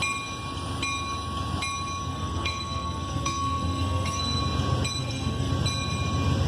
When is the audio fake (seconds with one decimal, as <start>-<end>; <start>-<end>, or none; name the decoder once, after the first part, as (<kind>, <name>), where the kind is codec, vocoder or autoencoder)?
2.1-4.4 (codec, SNAC); 5.0-5.5